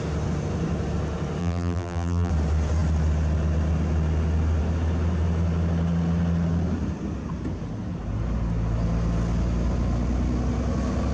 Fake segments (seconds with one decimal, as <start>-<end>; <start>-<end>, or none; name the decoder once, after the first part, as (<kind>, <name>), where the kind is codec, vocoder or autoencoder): 1.4-2.3 (vocoder, BigVGAN v2)